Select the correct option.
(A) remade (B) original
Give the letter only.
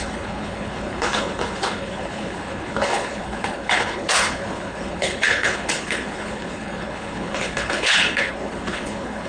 A